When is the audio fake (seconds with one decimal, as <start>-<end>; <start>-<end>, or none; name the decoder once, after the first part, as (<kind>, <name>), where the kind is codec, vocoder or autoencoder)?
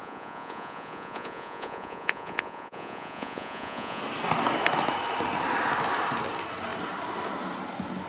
0.0-4.0 (vocoder, Vocos)